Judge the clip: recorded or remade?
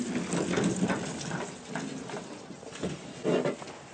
recorded